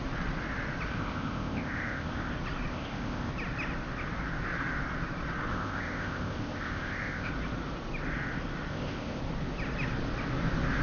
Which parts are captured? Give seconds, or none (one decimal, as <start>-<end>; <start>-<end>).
0.0-0.9; 2.3-2.7; 3.3-5.5; 7.3-8.7; 9.2-10.8

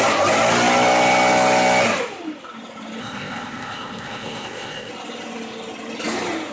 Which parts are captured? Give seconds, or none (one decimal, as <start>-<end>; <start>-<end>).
0.0-3.0; 4.9-6.5

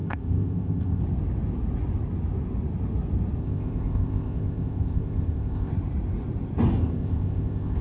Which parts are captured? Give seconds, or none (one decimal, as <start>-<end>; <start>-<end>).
1.0-3.4; 5.7-6.8

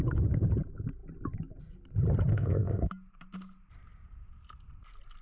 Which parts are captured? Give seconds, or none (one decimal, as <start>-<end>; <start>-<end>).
0.0-2.3; 2.9-5.2